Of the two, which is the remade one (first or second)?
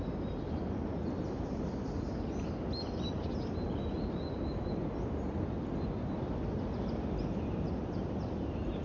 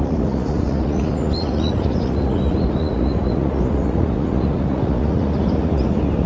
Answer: second